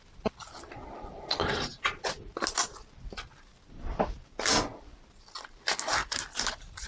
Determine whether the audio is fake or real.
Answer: real